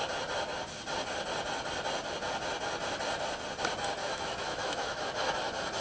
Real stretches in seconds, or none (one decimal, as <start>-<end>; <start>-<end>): 0.0-4.0; 5.1-5.8